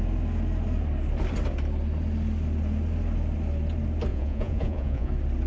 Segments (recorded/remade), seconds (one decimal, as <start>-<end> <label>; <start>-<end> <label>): 0.0-4.1 recorded; 4.1-5.1 remade; 5.1-5.5 recorded